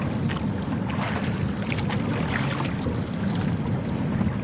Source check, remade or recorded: recorded